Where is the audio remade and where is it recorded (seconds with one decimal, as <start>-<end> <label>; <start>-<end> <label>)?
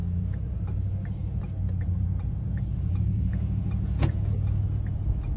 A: 0.0-0.5 remade; 0.5-1.9 recorded; 1.9-4.6 remade; 4.6-5.4 recorded